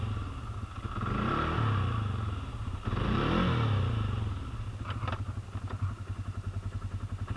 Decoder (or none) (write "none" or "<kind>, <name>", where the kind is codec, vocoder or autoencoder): none